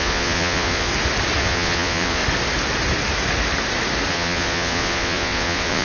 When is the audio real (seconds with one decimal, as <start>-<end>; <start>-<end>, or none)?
0.9-1.4; 2.2-4.1